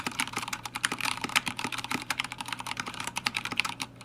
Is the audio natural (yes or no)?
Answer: no